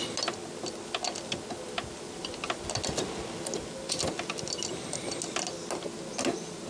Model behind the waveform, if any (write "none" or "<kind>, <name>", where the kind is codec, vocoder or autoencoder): none